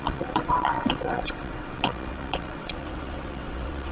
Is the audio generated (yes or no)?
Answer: yes